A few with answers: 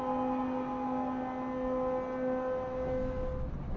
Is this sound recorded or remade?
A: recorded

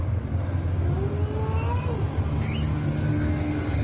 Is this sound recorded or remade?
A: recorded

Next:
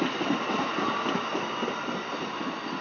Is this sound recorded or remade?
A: recorded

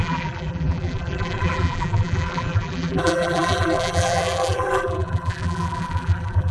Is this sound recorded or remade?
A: remade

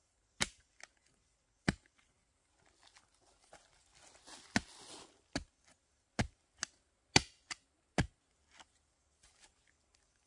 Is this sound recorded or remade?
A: recorded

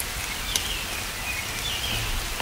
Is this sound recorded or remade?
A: recorded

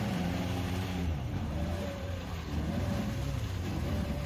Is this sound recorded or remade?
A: remade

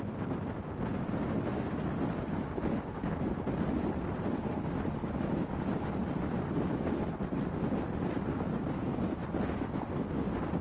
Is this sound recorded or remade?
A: recorded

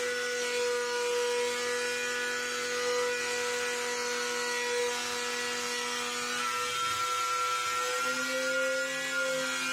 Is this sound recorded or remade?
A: recorded